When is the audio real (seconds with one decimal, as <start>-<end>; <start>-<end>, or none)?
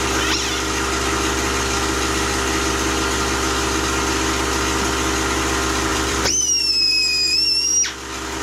0.0-5.9; 7.5-8.4